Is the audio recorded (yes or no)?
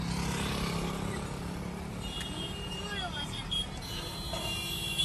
yes